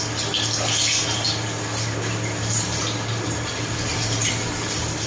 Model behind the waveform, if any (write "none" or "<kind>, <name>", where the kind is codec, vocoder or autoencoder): none